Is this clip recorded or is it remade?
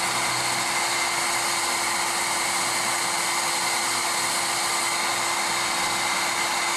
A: recorded